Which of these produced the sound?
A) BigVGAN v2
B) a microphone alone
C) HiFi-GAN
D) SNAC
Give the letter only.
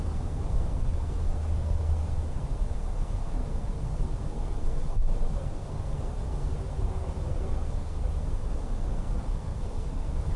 D